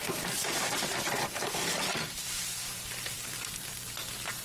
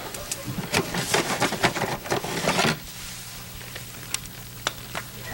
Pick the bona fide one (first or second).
second